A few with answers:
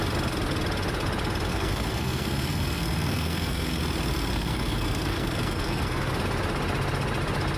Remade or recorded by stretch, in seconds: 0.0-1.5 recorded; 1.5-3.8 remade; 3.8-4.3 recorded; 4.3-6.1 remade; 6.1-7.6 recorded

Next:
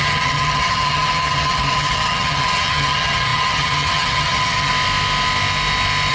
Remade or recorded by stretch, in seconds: 0.0-4.7 remade; 4.7-6.1 recorded

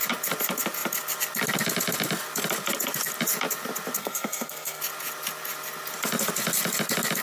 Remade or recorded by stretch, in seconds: 0.0-4.0 recorded; 4.0-4.8 remade; 4.8-7.2 recorded

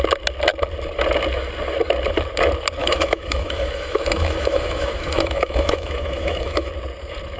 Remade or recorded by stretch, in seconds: 0.0-2.8 recorded; 2.8-6.7 remade; 6.7-7.4 recorded

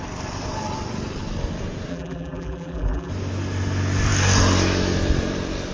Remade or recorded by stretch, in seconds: 0.0-1.9 recorded; 1.9-3.1 remade; 3.1-5.7 recorded